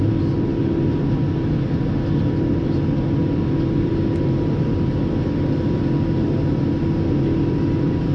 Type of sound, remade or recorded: recorded